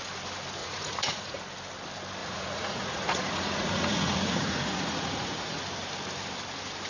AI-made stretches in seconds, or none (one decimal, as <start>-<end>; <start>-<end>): 0.6-1.4; 2.2-5.6